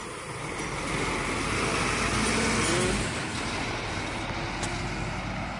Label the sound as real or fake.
real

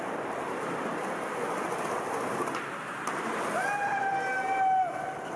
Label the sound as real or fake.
real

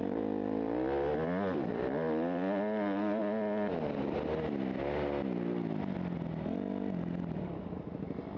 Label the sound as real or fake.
real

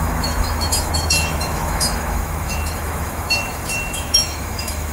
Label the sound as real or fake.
fake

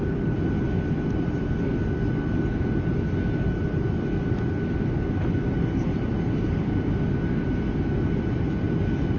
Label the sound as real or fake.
real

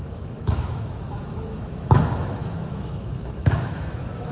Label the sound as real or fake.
fake